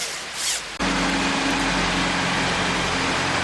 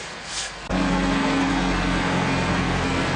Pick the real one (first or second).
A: first